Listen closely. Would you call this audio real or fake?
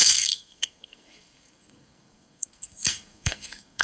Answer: fake